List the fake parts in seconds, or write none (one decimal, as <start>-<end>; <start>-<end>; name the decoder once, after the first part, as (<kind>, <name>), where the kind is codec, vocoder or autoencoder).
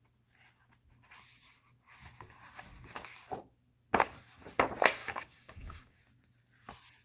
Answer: 5.0-6.0 (codec, DAC)